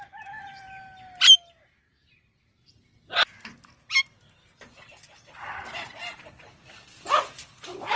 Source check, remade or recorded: recorded